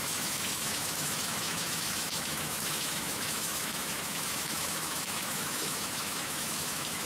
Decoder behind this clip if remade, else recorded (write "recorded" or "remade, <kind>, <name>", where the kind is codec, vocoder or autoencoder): remade, autoencoder, DAC-VAE